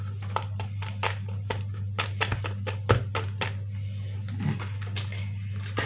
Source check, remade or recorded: recorded